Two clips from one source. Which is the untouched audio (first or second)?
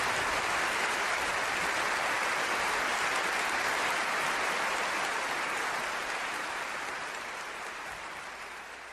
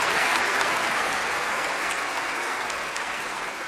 first